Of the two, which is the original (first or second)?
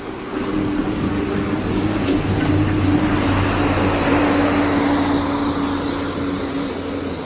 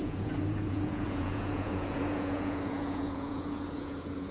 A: first